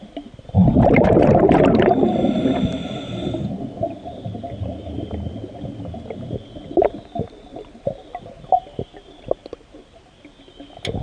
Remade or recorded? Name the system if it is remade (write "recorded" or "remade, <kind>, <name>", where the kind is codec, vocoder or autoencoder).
recorded